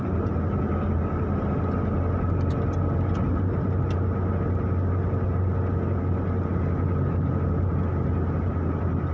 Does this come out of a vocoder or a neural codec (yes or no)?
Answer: no